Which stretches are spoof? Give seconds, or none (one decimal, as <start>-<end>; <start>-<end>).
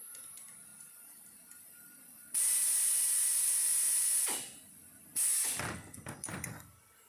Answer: none